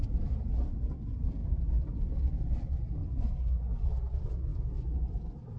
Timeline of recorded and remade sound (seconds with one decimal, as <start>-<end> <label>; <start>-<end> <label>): 0.0-3.0 remade; 3.0-3.8 recorded; 3.8-5.6 remade